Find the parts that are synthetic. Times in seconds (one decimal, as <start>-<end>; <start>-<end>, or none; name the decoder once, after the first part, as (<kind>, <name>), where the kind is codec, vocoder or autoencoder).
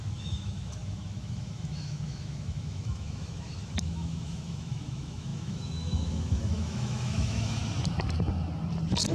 0.0-7.6 (autoencoder, DAC-VAE)